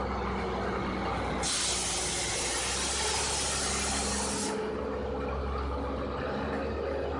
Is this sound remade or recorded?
recorded